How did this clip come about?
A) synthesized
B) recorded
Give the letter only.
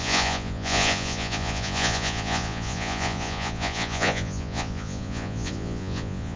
A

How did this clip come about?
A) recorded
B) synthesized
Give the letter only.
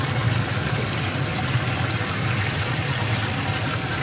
A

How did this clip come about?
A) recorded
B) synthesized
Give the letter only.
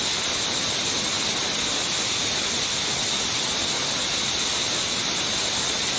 A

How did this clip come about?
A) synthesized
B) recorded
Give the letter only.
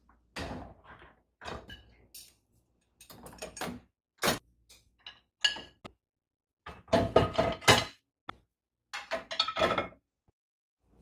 B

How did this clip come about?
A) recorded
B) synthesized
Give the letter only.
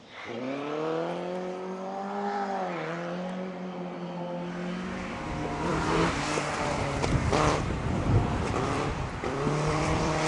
B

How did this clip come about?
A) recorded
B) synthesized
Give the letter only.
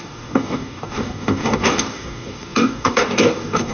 B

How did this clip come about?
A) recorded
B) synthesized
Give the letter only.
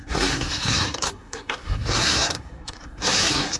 B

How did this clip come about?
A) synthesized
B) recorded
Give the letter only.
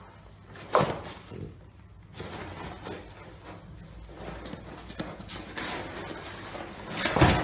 B